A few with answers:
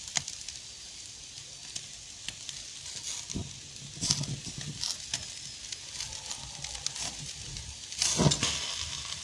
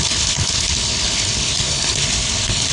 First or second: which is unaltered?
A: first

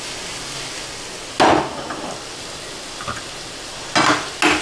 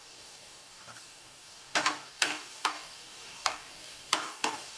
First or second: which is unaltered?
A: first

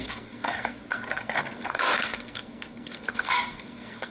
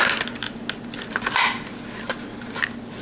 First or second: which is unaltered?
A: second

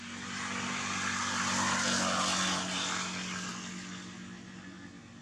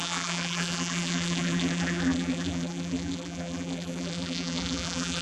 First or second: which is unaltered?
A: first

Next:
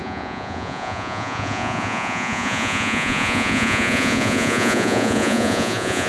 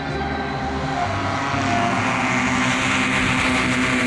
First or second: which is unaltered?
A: second